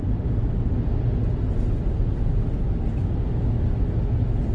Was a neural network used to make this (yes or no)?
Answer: no